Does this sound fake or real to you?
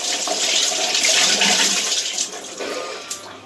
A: real